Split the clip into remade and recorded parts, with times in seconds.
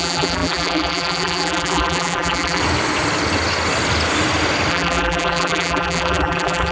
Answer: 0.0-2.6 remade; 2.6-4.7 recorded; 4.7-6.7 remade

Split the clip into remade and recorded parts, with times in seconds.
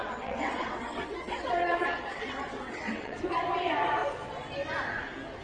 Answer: 0.0-3.2 remade; 3.2-5.4 recorded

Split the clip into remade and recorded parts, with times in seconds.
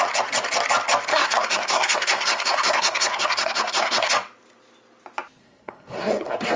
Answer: 0.0-1.1 recorded; 1.1-4.1 remade; 4.1-5.4 recorded; 5.4-6.6 remade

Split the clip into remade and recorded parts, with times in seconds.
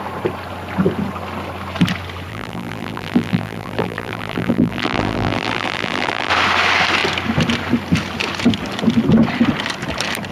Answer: 0.0-2.3 recorded; 2.3-6.3 remade; 6.3-10.3 recorded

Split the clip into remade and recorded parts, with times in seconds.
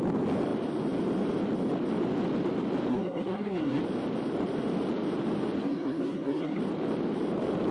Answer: 0.0-2.9 recorded; 2.9-3.8 remade; 3.8-5.6 recorded; 5.6-6.6 remade; 6.6-7.7 recorded